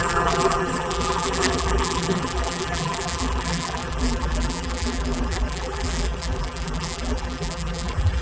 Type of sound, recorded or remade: remade